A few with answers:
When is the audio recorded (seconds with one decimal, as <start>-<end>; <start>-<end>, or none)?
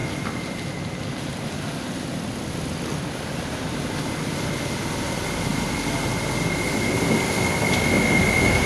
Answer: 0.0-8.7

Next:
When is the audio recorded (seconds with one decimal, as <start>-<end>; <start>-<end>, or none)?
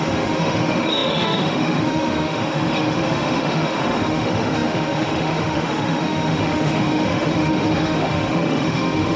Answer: none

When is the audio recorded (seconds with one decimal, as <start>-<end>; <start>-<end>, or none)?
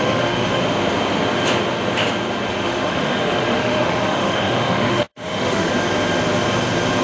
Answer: 0.6-2.5; 5.7-7.0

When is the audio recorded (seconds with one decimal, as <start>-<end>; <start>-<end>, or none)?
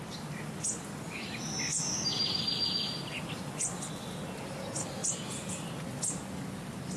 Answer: 0.0-7.0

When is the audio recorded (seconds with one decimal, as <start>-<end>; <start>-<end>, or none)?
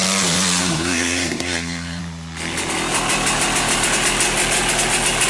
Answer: 0.0-0.6; 2.0-5.3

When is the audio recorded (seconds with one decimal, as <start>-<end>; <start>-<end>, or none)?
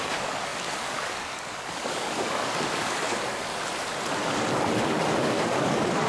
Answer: 3.5-5.0